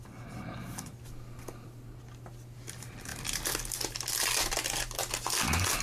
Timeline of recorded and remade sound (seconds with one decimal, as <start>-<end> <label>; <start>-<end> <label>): 0.0-5.8 recorded